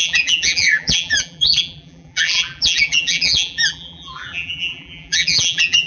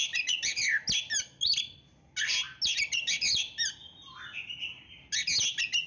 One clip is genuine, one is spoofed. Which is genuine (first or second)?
second